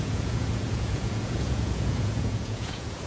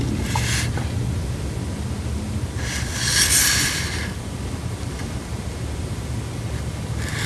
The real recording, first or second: second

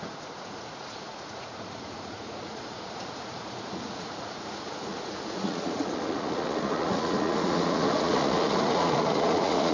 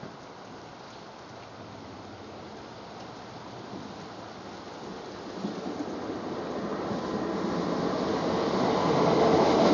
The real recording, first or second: second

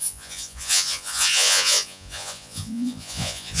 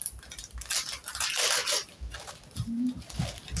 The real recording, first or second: second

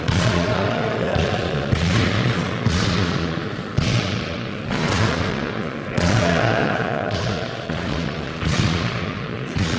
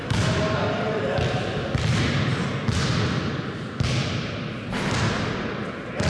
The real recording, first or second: second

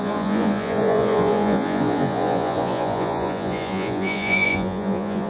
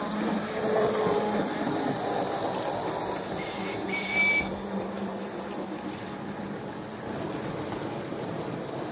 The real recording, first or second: second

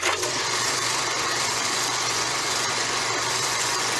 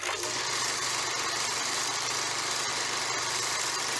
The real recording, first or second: second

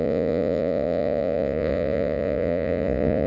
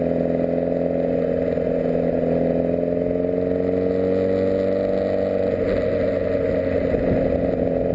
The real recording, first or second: second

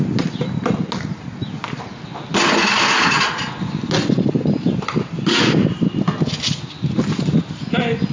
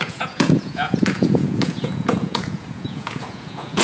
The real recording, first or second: first